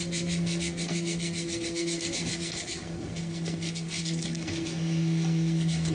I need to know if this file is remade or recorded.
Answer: remade